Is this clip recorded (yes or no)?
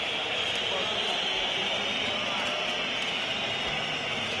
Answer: yes